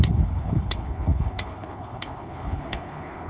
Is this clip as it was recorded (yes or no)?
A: no